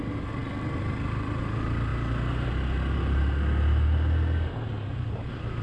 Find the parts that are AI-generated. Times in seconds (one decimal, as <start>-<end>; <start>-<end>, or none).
0.4-1.4